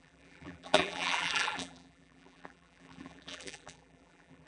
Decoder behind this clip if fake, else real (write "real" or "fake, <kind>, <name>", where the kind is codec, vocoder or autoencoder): fake, vocoder, BigVGAN v2